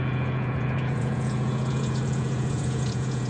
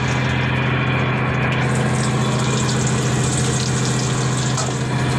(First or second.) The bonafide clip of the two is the second